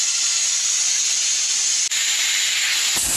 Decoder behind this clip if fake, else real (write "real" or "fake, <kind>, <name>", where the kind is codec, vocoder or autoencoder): real